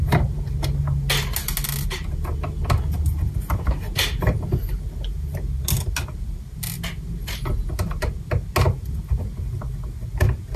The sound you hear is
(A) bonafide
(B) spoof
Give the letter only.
A